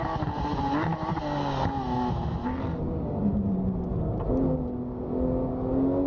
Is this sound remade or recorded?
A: recorded